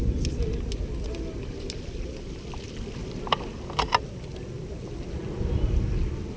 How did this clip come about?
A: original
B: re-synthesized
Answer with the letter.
A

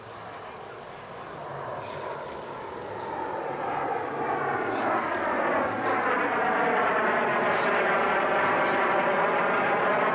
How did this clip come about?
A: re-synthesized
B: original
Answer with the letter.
B